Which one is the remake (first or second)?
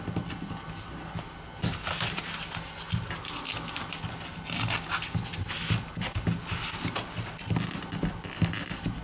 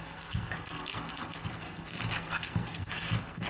second